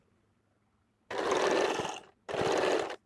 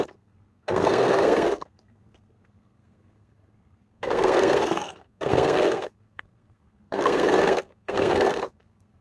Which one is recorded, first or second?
first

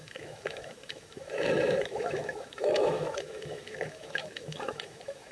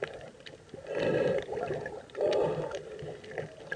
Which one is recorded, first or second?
second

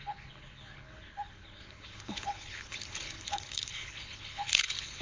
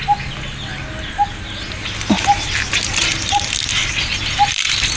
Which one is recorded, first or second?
second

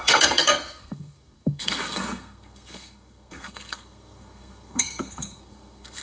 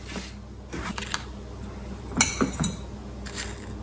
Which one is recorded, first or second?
second